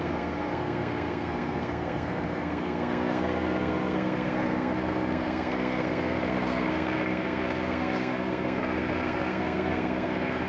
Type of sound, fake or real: fake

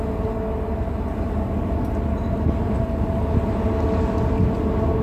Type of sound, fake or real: real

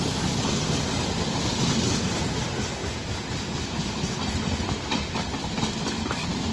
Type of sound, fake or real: real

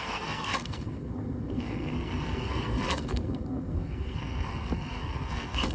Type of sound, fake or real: fake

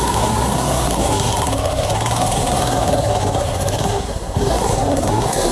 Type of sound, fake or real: fake